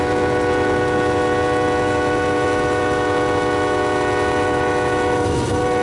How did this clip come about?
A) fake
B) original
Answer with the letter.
B